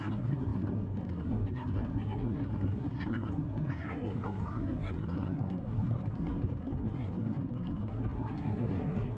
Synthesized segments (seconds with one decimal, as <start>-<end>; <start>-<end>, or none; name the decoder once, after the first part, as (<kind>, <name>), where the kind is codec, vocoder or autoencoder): 0.0-9.2 (codec, SNAC)